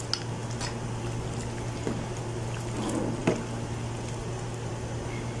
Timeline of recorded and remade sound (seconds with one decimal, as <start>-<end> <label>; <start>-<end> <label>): 0.0-5.4 recorded